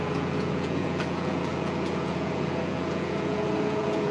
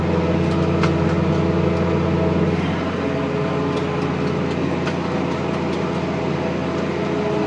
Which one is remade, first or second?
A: first